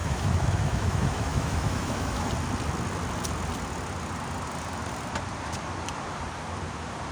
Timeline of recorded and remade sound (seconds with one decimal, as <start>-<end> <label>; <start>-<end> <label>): 0.0-2.3 remade; 2.3-7.1 recorded